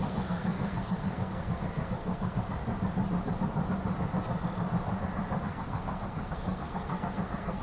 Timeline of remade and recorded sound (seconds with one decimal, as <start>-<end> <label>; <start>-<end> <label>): 0.0-2.6 remade; 2.6-5.4 recorded; 5.4-7.6 remade